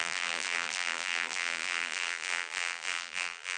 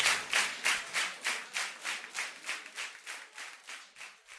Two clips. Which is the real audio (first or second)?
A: second